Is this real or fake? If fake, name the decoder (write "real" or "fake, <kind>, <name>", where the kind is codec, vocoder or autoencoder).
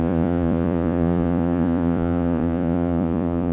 fake, vocoder, Vocos